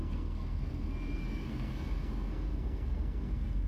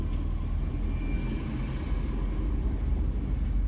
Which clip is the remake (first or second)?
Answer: first